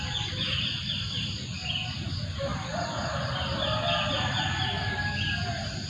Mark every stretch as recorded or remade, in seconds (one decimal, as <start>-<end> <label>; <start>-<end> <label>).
0.0-2.5 recorded; 2.5-5.4 remade; 5.4-5.9 recorded